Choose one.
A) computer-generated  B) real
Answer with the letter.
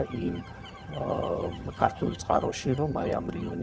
A